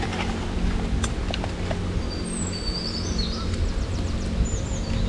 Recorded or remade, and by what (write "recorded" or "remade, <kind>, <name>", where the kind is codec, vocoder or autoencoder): recorded